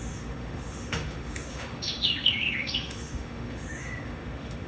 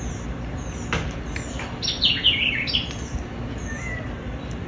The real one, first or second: second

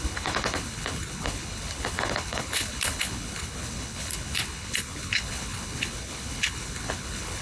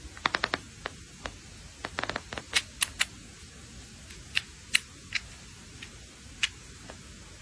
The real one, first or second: second